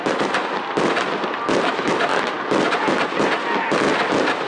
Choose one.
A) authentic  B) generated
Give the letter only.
A